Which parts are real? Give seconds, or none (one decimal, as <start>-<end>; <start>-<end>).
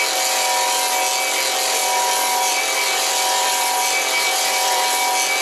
0.0-1.8; 5.0-5.4